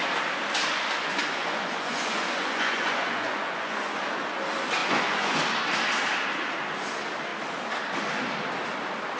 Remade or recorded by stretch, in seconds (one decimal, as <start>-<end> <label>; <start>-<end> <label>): 0.0-0.7 recorded; 0.7-4.0 remade; 4.0-4.8 recorded; 4.8-5.4 remade; 5.4-9.2 recorded